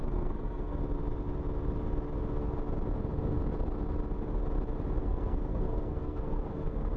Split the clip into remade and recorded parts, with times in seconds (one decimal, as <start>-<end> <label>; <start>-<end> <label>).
0.0-0.8 remade; 0.8-5.0 recorded; 5.0-7.0 remade

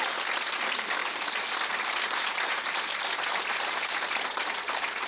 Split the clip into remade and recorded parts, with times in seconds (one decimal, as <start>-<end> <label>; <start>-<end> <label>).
0.0-5.1 recorded

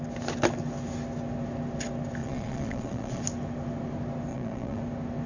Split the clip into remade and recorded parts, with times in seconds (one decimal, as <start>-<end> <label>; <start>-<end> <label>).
0.0-2.2 recorded; 2.2-3.2 remade; 3.2-4.3 recorded; 4.3-4.8 remade; 4.8-5.3 recorded

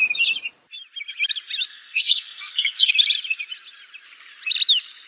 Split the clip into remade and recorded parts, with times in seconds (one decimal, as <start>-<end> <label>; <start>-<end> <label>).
0.0-1.7 recorded; 1.7-2.9 remade; 2.9-5.1 recorded

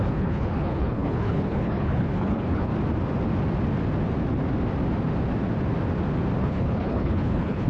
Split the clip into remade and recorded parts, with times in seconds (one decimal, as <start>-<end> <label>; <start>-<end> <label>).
0.0-2.7 remade; 2.7-6.4 recorded; 6.4-7.7 remade

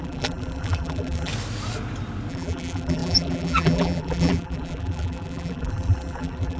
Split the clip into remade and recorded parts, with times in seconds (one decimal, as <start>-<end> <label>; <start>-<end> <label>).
0.0-1.3 remade; 1.3-2.3 recorded; 2.3-6.6 remade